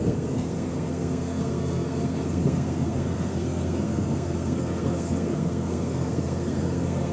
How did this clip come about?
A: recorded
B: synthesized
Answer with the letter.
B